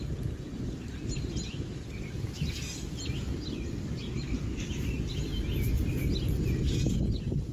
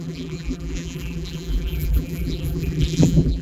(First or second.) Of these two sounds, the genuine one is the first